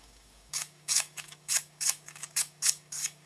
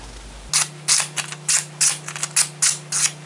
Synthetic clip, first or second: first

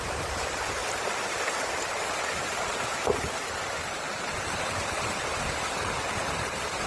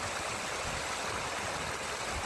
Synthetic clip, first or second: first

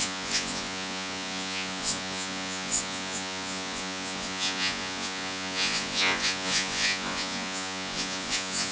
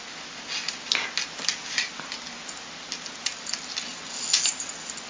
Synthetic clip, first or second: first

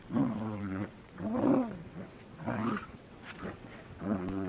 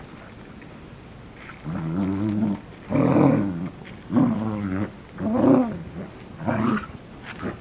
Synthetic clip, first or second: first